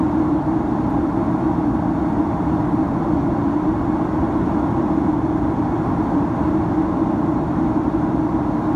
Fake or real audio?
real